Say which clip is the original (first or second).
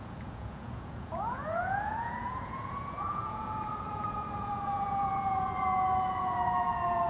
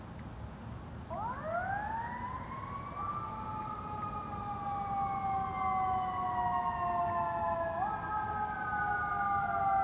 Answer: second